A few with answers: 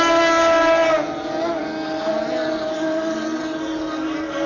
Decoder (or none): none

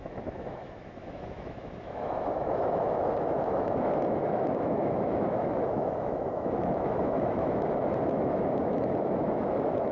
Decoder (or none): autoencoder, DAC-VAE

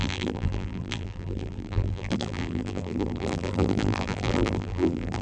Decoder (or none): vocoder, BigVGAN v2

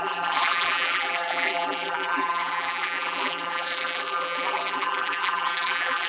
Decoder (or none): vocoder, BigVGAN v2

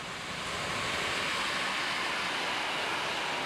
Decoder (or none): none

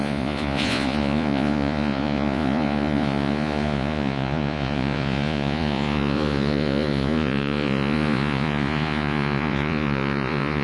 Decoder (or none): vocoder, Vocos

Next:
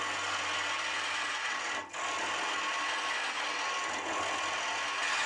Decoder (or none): none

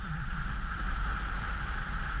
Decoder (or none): none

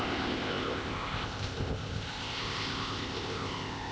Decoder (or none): codec, ZipCodec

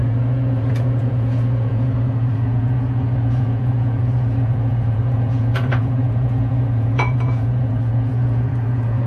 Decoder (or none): vocoder, Vocos